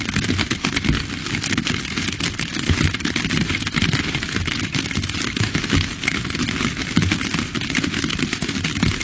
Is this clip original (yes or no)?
yes